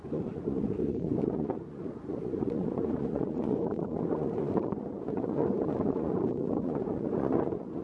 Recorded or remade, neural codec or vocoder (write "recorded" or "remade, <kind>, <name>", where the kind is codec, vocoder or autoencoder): remade, vocoder, Vocos